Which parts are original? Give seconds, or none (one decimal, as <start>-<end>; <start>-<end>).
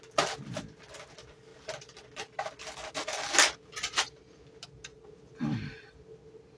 0.0-6.6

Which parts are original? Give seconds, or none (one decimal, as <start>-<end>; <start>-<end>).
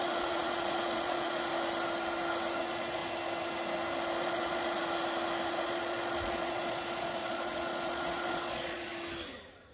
1.5-2.6; 3.0-4.2; 4.8-5.5; 8.9-9.7